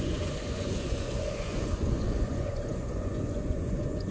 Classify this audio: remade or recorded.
remade